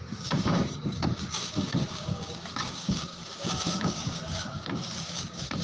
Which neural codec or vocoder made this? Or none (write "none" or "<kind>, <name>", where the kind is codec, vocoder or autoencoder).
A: codec, DAC